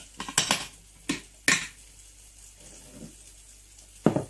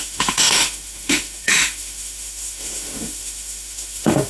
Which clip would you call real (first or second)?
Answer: first